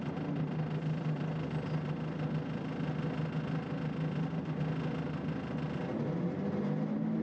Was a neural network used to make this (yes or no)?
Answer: no